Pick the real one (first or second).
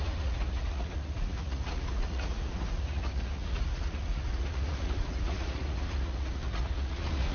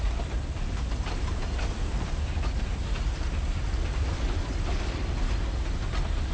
second